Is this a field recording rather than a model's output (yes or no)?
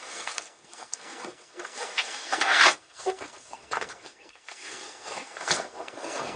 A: no